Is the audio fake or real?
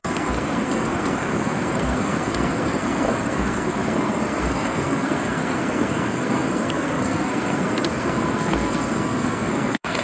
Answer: fake